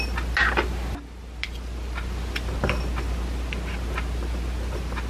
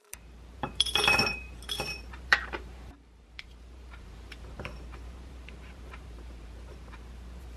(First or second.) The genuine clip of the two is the first